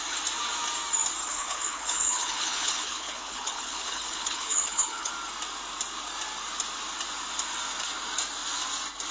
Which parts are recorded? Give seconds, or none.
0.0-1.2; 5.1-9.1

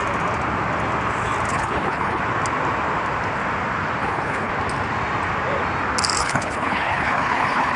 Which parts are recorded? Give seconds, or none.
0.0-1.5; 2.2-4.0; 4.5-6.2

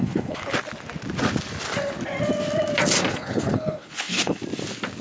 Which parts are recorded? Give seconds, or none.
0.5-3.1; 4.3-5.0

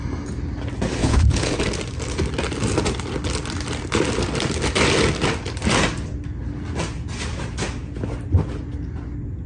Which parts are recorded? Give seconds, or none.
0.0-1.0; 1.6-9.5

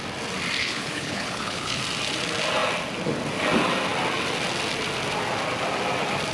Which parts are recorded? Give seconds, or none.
0.0-0.6; 1.8-6.3

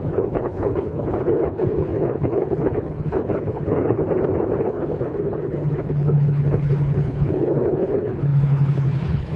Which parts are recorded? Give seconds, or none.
4.0-4.6

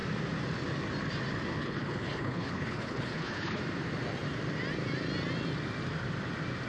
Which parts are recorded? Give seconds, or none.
0.0-1.6; 3.6-6.7